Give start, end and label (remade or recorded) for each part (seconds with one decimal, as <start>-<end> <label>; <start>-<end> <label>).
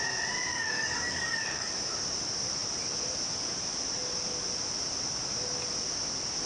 0.0-0.5 recorded; 0.5-1.7 remade; 1.7-6.5 recorded